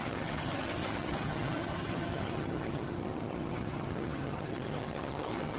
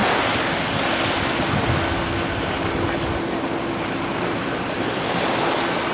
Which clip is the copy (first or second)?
first